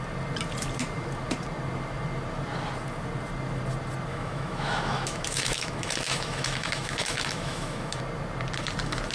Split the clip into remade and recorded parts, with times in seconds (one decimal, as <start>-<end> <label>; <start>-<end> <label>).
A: 0.0-4.1 recorded; 4.1-8.0 remade; 8.0-9.1 recorded